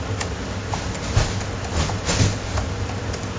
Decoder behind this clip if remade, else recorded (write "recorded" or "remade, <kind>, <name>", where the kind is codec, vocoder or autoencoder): recorded